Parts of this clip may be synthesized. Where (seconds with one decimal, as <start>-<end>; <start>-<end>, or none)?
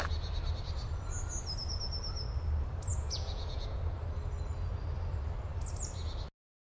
2.9-3.8